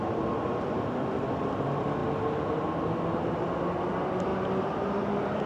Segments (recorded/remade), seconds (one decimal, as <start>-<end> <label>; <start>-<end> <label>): 0.0-5.5 recorded